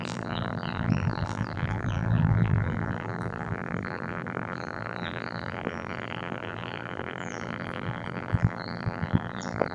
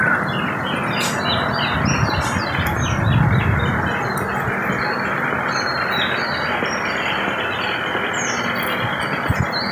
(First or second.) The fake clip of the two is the first